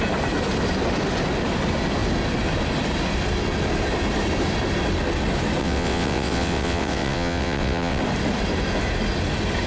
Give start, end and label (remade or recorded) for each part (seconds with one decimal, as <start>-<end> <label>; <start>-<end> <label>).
0.0-5.6 recorded; 5.6-8.0 remade; 8.0-9.7 recorded